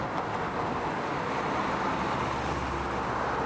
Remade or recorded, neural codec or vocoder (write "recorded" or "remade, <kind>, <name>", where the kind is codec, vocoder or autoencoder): recorded